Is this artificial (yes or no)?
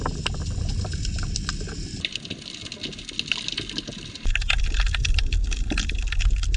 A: no